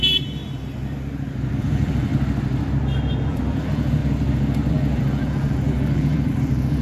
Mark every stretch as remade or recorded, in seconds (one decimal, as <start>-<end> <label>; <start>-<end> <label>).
0.0-0.4 remade; 0.4-1.6 recorded; 1.6-2.1 remade; 2.1-3.3 recorded; 3.3-4.0 remade; 4.0-4.7 recorded; 4.7-6.8 remade